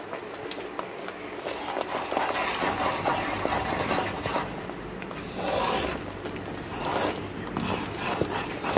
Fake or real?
real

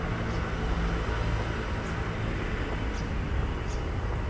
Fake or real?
real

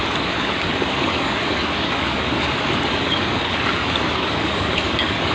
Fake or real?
fake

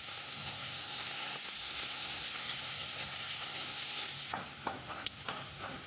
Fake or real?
fake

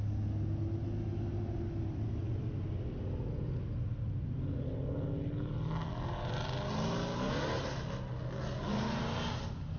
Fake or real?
real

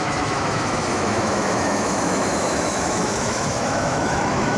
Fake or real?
fake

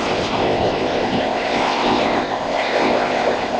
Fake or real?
fake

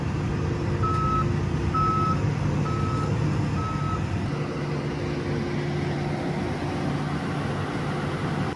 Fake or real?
real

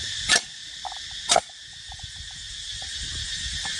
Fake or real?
real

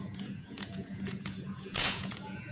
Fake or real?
fake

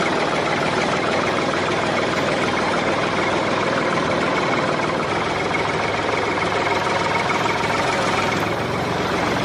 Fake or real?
fake